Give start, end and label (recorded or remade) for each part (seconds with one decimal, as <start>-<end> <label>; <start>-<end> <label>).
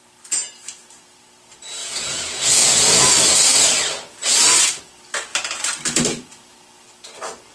0.0-1.8 recorded; 1.8-3.1 remade; 3.1-7.5 recorded